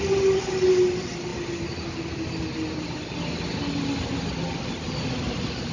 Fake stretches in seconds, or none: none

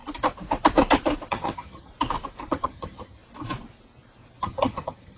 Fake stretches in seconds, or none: 1.3-1.9 (vocoder, HiFi-GAN); 2.5-3.2; 4.4-5.2

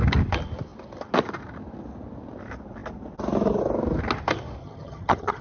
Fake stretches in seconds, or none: 4.6-5.4 (vocoder, HiFi-GAN)

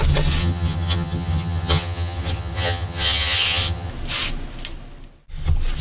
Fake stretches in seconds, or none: 0.4-3.9 (vocoder, HiFi-GAN)